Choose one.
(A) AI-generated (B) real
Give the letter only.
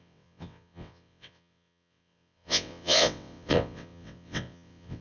A